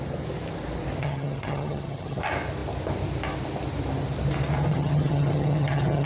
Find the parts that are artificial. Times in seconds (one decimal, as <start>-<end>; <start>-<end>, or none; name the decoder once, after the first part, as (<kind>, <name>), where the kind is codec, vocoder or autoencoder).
1.0-2.2 (vocoder, HiFi-GAN); 4.7-6.1